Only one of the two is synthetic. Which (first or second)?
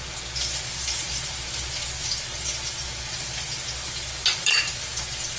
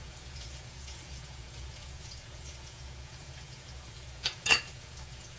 second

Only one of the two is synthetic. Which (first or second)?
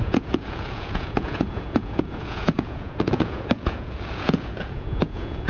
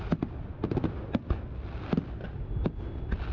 first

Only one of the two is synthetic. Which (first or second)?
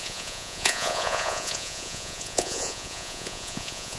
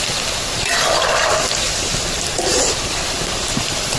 first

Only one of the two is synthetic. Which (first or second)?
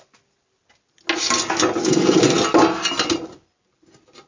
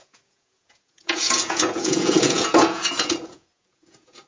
second